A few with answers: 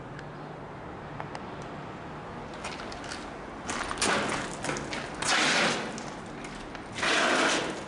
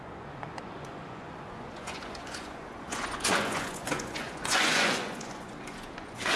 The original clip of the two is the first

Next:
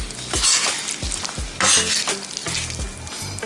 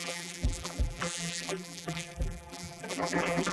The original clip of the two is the first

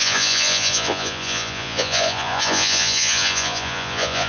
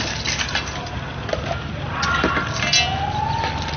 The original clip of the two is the second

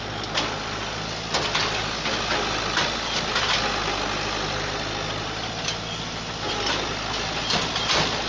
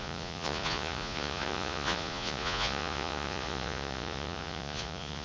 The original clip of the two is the first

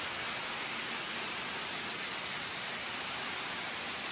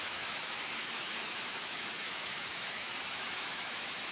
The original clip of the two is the first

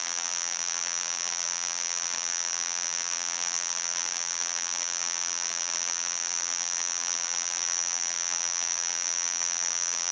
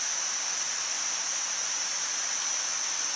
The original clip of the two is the second